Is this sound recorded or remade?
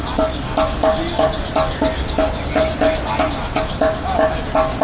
recorded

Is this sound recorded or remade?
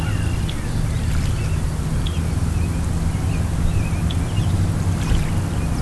recorded